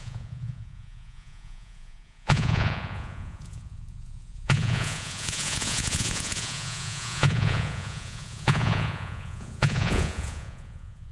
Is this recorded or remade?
remade